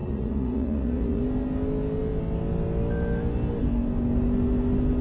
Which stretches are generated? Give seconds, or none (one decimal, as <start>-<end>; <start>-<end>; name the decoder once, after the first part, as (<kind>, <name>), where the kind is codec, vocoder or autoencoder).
0.0-1.2 (vocoder, Vocos)